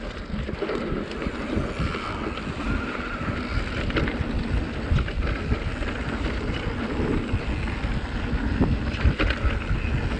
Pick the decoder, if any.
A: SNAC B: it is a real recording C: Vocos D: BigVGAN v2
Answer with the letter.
B